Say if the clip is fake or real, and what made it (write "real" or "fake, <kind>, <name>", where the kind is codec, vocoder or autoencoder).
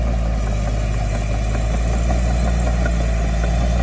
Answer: real